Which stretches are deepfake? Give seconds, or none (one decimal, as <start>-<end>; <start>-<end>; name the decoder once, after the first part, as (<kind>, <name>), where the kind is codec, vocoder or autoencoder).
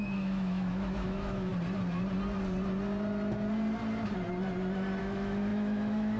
0.0-1.5 (autoencoder, DAC-VAE); 5.0-6.2